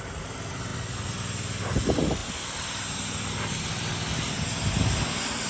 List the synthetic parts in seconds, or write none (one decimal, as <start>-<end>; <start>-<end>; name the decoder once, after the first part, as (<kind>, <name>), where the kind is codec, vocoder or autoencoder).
none